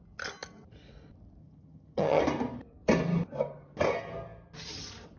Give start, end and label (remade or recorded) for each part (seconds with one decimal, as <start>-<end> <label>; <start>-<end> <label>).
0.0-1.4 recorded; 1.4-2.2 remade; 2.2-5.2 recorded